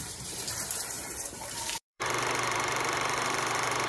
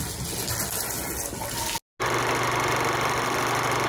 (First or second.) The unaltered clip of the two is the second